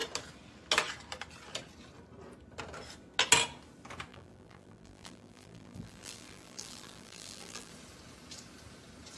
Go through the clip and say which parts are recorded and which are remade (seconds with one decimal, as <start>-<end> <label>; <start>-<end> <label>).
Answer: 0.0-4.1 recorded; 4.1-7.7 remade; 7.7-9.2 recorded